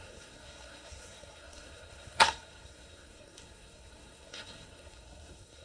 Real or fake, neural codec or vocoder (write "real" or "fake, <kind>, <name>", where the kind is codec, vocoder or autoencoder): fake, codec, SNAC